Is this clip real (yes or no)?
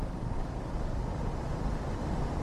no